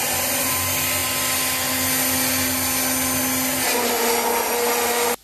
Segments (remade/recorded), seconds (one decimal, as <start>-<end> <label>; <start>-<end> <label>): 0.0-5.2 recorded